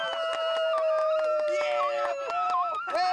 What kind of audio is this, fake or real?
real